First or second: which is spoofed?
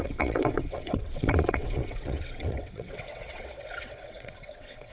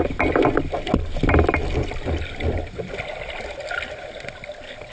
first